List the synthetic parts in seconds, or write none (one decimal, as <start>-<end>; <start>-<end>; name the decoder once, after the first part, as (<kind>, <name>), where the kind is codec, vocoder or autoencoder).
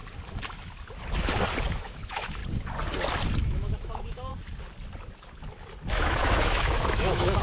1.6-2.4 (autoencoder, DAC-VAE); 3.4-4.3; 5.9-7.4